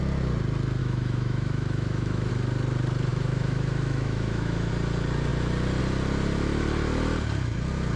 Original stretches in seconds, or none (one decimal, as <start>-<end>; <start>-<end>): 0.0-0.8; 2.3-3.1; 4.7-8.0